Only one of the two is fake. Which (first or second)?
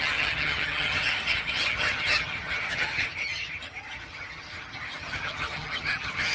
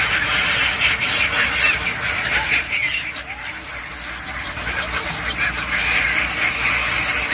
first